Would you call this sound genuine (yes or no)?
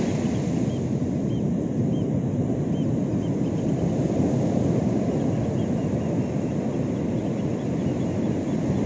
yes